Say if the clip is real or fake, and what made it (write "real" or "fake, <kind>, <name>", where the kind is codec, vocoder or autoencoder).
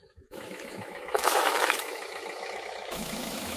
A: fake, autoencoder, DAC-VAE